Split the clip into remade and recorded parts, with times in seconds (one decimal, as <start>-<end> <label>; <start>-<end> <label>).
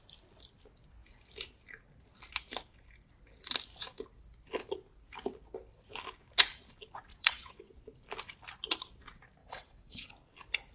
0.0-7.1 recorded; 7.1-7.7 remade; 7.7-9.4 recorded; 9.4-10.1 remade; 10.1-10.7 recorded